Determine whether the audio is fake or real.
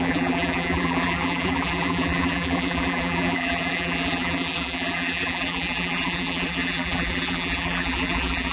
fake